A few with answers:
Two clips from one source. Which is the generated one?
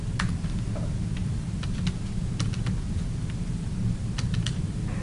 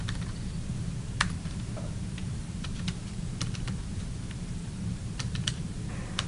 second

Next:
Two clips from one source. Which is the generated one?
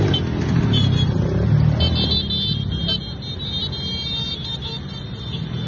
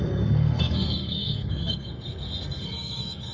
second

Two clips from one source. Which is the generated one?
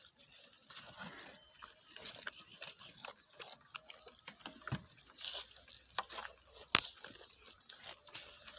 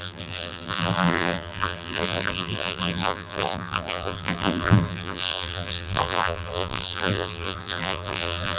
second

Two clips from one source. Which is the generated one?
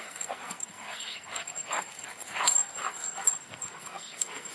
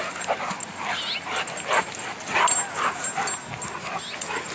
first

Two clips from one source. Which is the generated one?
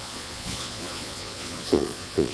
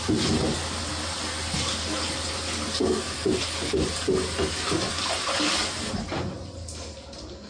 first